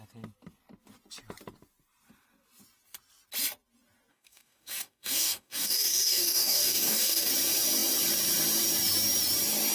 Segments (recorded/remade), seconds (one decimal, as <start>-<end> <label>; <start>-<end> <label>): 0.0-4.1 recorded; 4.1-7.3 remade; 7.3-9.7 recorded